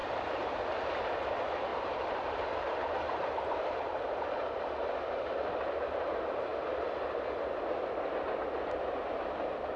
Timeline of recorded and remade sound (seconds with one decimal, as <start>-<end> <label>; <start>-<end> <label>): 0.0-0.6 remade; 0.6-1.7 recorded; 1.7-5.9 remade; 5.9-9.8 recorded